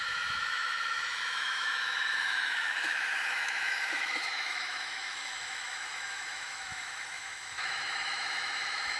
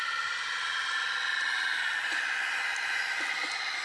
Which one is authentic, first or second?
second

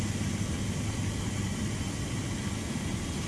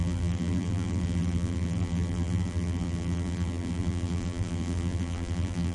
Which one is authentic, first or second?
first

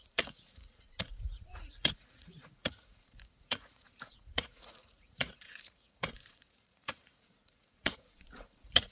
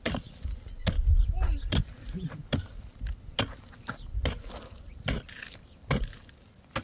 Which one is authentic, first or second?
second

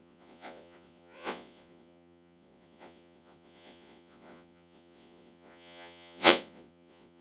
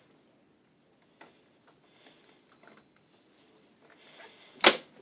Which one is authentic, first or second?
second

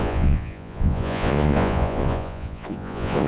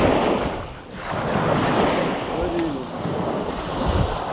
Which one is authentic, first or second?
second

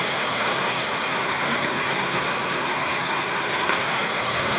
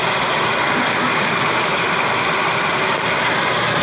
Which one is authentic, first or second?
second